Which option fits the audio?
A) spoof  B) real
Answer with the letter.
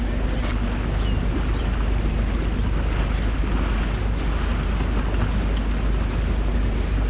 B